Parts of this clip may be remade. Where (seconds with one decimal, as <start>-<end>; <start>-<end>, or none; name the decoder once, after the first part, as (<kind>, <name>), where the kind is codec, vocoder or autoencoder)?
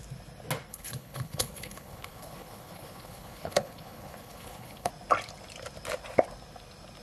0.7-4.9 (codec, HILCodec)